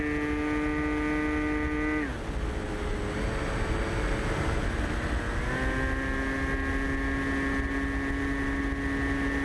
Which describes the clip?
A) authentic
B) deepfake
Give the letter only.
A